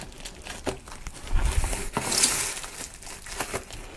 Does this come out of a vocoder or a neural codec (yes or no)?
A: no